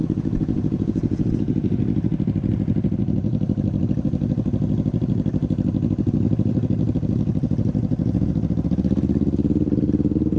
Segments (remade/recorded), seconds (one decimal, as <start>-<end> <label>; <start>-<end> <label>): 0.0-1.3 remade; 1.3-10.4 recorded